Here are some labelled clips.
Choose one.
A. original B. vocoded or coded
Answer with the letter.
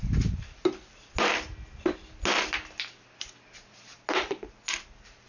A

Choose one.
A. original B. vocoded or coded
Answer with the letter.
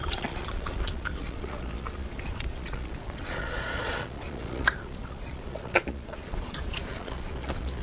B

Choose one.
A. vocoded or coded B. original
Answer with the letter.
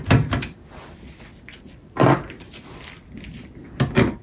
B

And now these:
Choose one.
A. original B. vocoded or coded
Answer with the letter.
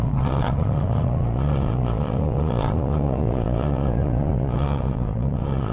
B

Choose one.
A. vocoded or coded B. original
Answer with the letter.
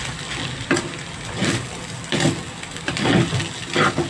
B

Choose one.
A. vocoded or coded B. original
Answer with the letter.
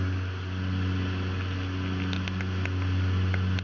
B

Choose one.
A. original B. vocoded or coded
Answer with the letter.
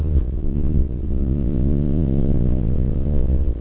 B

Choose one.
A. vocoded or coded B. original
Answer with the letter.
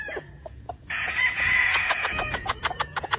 A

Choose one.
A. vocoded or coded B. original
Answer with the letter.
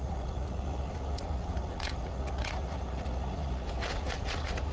A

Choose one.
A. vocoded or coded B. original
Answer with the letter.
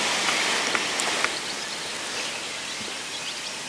B